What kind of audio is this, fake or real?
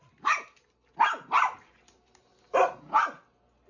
real